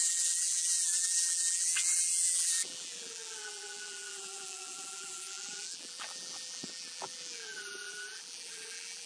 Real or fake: fake